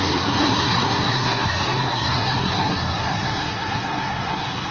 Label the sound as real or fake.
fake